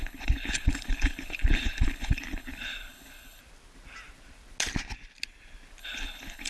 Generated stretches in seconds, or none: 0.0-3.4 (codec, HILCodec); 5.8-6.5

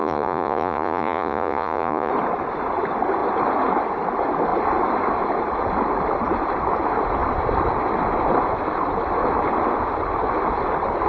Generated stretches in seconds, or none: 0.0-2.1 (vocoder, Vocos)

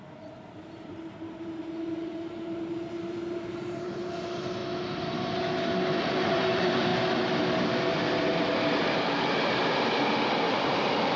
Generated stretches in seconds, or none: 0.0-4.6 (vocoder, BigVGAN v2); 6.3-6.9; 10.6-11.2